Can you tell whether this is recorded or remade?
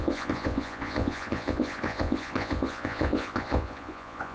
remade